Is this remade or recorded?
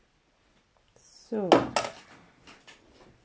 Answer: recorded